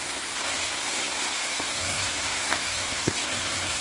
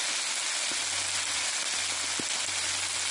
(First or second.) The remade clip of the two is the first